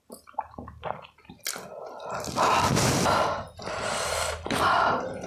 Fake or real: real